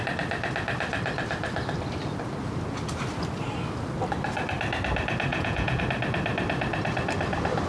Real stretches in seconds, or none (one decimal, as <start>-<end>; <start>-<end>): 0.0-5.3; 5.8-7.7